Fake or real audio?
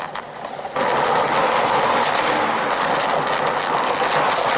real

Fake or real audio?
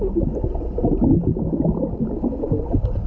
real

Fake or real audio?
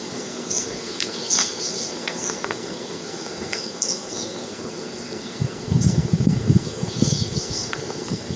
fake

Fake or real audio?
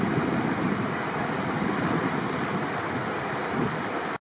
real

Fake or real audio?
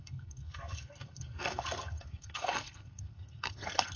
fake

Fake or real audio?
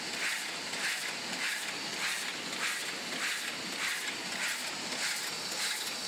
real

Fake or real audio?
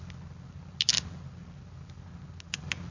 real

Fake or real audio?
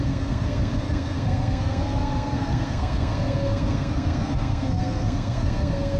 fake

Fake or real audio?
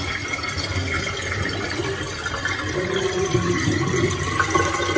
real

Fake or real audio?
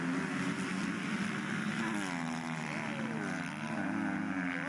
real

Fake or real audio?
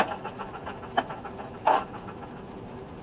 real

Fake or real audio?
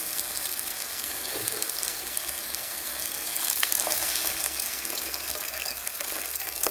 fake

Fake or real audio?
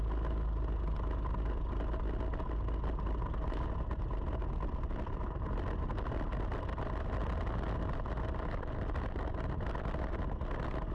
real